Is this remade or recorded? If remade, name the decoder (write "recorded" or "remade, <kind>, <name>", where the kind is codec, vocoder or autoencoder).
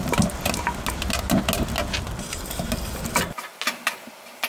recorded